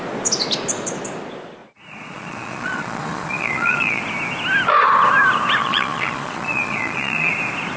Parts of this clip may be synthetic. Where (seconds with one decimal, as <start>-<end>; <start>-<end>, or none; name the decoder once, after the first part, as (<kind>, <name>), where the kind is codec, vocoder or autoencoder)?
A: 1.6-4.0 (vocoder, Vocos); 5.6-7.3